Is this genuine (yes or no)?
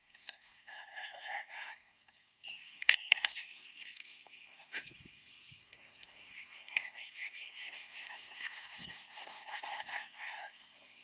no